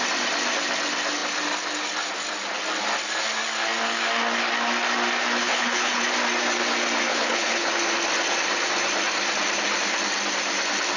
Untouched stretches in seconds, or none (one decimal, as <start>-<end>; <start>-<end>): 0.0-5.4; 6.0-7.1; 7.7-11.0

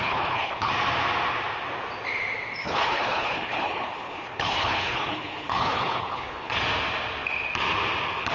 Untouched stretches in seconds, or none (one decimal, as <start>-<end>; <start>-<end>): 0.7-2.6; 6.6-8.3

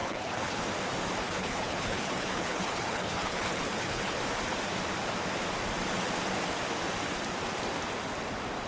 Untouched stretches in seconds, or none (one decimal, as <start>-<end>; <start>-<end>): 0.6-1.2; 4.2-8.7

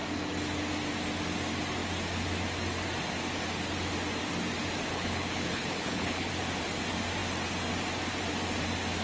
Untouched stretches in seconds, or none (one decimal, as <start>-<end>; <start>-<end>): 0.0-4.9; 6.3-9.0